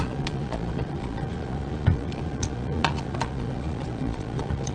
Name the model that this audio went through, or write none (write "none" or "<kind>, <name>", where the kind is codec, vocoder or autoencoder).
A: vocoder, Vocos